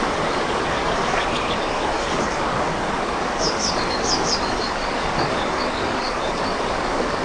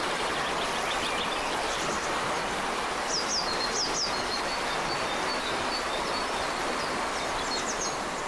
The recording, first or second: second